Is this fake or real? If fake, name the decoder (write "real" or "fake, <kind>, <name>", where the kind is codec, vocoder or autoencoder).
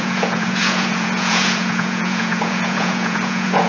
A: fake, vocoder, Vocos